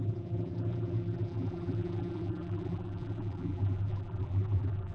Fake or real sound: fake